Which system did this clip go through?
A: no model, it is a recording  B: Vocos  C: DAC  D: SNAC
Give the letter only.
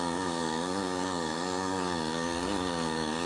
C